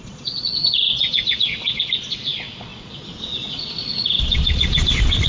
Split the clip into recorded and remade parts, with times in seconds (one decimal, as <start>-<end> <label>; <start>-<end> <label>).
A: 0.0-5.3 remade